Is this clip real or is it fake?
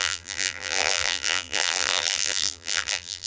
fake